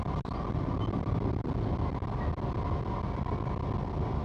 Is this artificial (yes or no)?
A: no